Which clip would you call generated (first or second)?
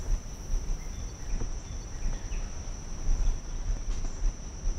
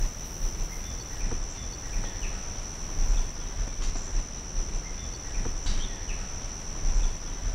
first